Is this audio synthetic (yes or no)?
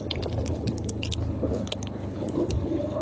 yes